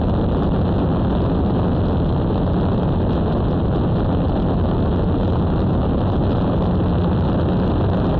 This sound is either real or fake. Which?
real